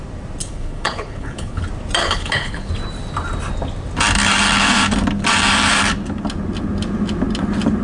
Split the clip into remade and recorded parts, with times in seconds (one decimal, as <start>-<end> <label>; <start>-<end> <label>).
0.0-0.4 recorded; 0.4-1.6 remade; 1.6-2.0 recorded; 2.0-2.7 remade; 2.7-7.8 recorded

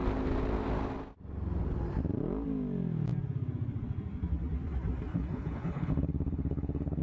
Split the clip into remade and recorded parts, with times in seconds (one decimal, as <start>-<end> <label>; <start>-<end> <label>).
0.0-5.1 recorded; 5.1-7.0 remade

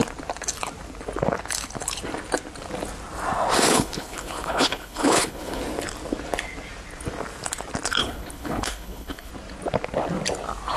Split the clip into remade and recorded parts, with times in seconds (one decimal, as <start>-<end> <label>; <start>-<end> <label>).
0.0-3.7 recorded; 3.7-5.6 remade; 5.6-8.0 recorded; 8.0-9.3 remade; 9.3-10.8 recorded

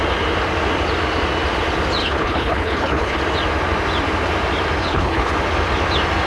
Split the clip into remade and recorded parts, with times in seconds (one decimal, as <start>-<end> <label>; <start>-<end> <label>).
0.0-2.0 recorded; 2.0-3.2 remade; 3.2-4.8 recorded; 4.8-5.3 remade; 5.3-6.3 recorded